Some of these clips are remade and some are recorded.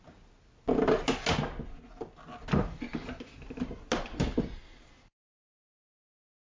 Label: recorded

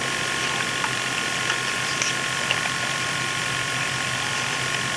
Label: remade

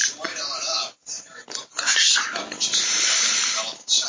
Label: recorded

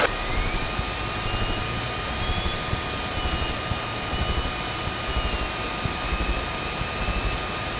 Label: recorded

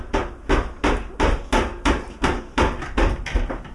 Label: recorded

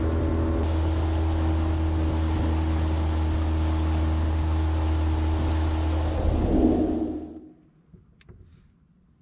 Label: recorded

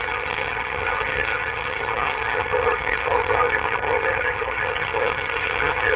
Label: remade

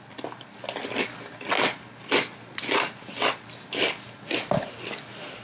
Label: recorded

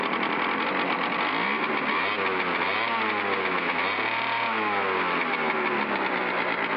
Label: recorded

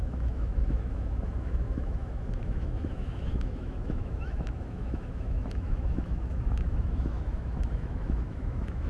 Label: remade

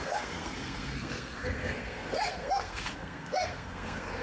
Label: remade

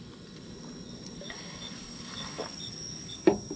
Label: recorded